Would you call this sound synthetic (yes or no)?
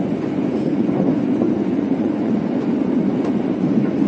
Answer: yes